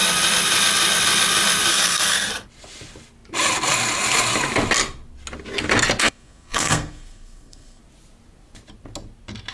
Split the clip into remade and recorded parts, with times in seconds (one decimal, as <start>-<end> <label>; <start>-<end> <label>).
0.0-1.7 recorded; 1.7-2.3 remade; 2.3-6.0 recorded; 6.0-7.8 remade; 7.8-9.5 recorded

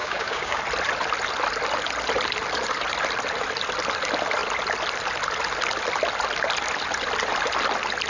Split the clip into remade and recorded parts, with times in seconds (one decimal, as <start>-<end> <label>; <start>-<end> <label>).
0.0-0.6 remade; 0.6-8.1 recorded

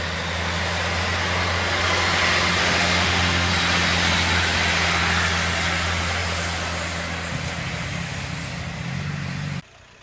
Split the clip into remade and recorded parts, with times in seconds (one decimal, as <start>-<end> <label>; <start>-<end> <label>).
0.0-2.6 recorded; 2.6-3.5 remade; 3.5-10.0 recorded

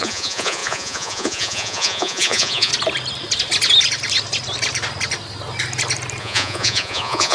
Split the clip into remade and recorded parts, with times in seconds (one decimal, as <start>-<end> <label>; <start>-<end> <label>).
0.0-2.7 remade; 2.7-6.2 recorded; 6.2-7.3 remade

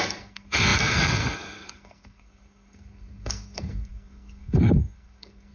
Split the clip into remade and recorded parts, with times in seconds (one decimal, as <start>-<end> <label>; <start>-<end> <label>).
0.0-5.5 remade

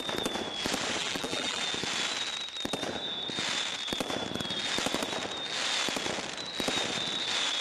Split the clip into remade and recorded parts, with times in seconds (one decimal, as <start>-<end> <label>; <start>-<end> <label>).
0.0-1.0 recorded; 1.0-1.6 remade; 1.6-7.6 recorded

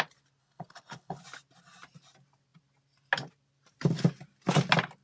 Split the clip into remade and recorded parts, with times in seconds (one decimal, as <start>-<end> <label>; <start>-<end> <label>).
0.0-0.4 recorded; 0.4-1.2 remade; 1.2-5.0 recorded

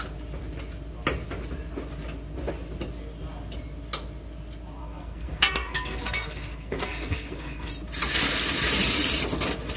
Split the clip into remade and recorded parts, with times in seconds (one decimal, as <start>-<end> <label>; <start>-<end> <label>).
0.0-4.8 recorded; 4.8-7.7 remade; 7.7-9.8 recorded